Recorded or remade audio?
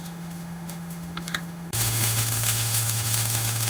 remade